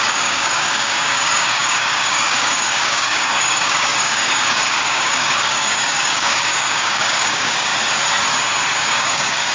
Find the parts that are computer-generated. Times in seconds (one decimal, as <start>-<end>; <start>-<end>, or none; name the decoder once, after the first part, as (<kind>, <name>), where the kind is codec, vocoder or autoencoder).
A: 0.0-7.7 (codec, DAC); 8.9-9.5